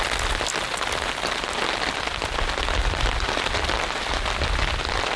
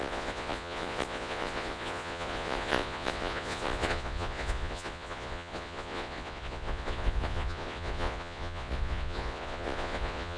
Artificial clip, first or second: second